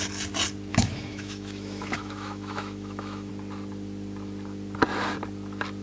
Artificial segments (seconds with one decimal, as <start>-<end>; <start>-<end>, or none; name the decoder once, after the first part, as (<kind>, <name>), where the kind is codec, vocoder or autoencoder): 0.7-3.3 (autoencoder, DAC-VAE)